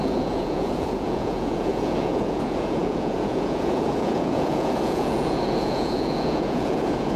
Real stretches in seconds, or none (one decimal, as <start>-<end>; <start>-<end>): none